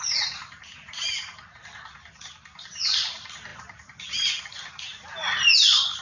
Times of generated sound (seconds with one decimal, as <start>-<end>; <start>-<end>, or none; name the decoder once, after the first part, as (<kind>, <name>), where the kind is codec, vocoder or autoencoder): none